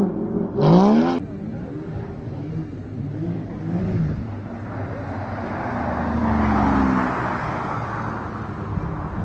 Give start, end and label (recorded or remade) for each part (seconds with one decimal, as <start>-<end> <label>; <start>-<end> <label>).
0.0-1.7 recorded; 1.7-2.5 remade; 2.5-3.1 recorded; 3.1-3.8 remade; 3.8-7.4 recorded; 7.4-7.9 remade; 7.9-9.2 recorded